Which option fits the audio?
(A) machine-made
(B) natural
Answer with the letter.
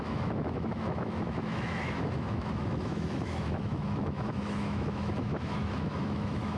A